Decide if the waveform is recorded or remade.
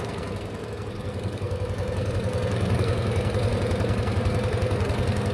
remade